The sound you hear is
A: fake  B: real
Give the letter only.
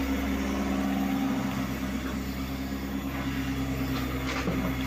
B